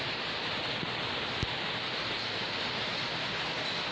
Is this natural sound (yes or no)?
yes